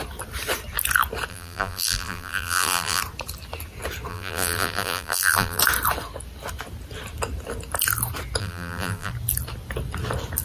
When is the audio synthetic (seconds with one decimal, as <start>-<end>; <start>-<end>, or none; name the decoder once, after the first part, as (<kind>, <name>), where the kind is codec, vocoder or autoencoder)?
1.3-3.0 (vocoder, BigVGAN v2); 4.1-5.6; 8.4-9.1